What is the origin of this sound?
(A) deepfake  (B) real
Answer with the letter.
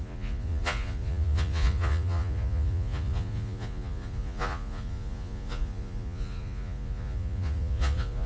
A